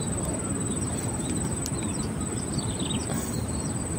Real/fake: real